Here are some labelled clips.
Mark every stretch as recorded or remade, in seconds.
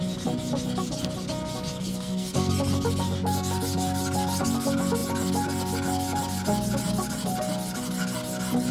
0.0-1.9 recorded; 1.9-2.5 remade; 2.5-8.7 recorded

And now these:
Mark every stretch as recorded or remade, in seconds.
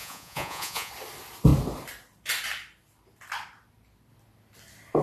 0.0-0.9 remade; 0.9-5.0 recorded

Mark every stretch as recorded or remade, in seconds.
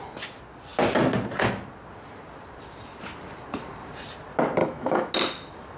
0.0-4.6 recorded; 4.6-5.1 remade; 5.1-5.8 recorded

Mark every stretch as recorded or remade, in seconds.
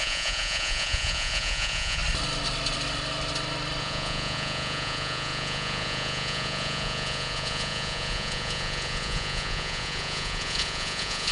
0.0-2.0 remade; 2.0-3.8 recorded; 3.8-11.3 remade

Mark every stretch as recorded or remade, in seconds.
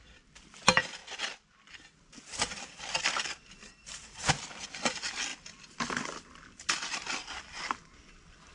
0.0-8.5 remade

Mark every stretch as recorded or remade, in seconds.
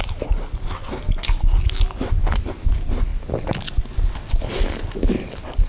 0.0-5.7 recorded